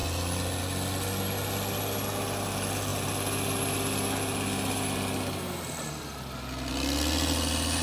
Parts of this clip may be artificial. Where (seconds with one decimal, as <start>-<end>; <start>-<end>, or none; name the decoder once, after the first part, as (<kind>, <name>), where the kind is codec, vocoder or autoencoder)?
none